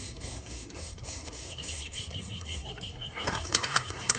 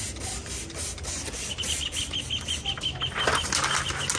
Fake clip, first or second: first